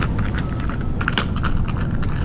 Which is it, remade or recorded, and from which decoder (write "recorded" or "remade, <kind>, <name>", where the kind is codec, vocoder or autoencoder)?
recorded